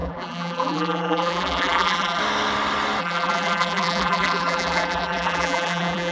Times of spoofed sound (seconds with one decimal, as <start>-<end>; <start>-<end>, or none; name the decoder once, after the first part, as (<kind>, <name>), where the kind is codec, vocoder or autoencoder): 0.0-2.2 (vocoder, BigVGAN v2); 3.0-6.1